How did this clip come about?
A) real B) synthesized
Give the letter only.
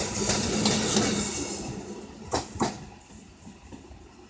A